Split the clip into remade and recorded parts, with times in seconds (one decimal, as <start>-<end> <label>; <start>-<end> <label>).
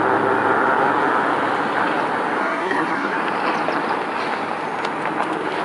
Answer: 0.0-2.4 recorded; 2.4-3.2 remade; 3.2-5.6 recorded